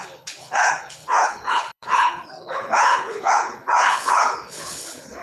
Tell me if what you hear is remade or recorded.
remade